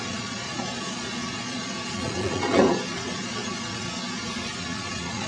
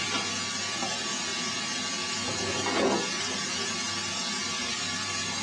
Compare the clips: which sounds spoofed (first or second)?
first